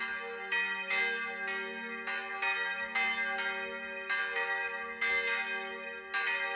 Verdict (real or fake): real